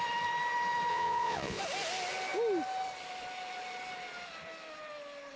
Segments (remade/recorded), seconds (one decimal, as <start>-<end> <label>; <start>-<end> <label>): 0.0-0.9 recorded; 0.9-1.6 remade; 1.6-5.4 recorded